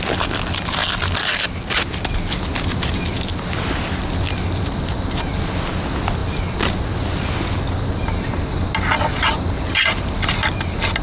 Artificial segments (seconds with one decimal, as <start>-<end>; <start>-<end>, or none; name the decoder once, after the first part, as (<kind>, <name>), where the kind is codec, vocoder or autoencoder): none